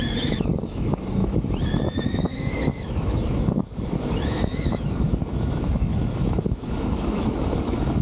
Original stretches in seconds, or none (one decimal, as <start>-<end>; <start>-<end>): none